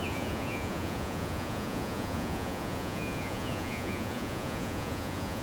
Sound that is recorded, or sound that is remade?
remade